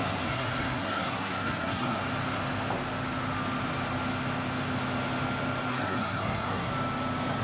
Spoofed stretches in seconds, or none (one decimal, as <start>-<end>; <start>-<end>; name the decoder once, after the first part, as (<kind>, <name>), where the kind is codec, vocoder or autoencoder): 0.0-2.0 (codec, SNAC); 5.7-6.7